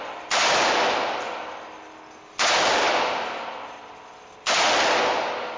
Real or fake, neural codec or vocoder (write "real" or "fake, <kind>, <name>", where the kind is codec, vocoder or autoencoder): real